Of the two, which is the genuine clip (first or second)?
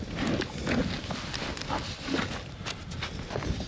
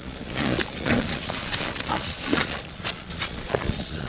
first